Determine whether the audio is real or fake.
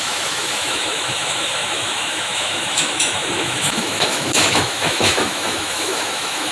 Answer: fake